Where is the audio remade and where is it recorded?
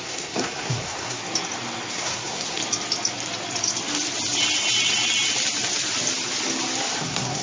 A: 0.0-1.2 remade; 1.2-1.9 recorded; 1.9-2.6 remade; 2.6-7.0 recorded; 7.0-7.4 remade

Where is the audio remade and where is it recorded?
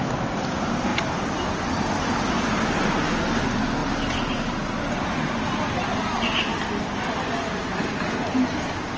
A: 0.0-9.0 recorded